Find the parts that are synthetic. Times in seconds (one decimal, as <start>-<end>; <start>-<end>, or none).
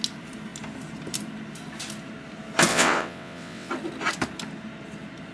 2.7-3.7